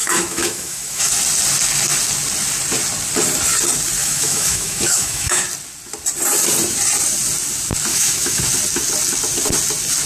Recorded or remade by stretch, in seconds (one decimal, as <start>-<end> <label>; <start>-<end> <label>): 0.0-1.1 remade; 1.1-4.0 recorded; 4.0-5.4 remade; 5.4-7.9 recorded; 7.9-8.4 remade; 8.4-10.1 recorded